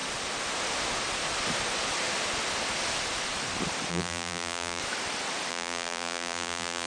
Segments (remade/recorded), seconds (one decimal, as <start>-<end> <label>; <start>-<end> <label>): 0.0-3.9 recorded; 3.9-4.8 remade; 4.8-5.5 recorded; 5.5-6.9 remade